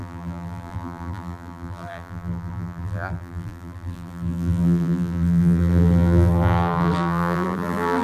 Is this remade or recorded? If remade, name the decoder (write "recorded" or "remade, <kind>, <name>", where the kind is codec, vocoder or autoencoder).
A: remade, vocoder, BigVGAN v2